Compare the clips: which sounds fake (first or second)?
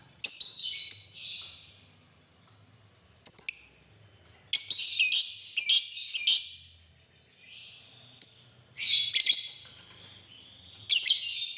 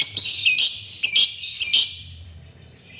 second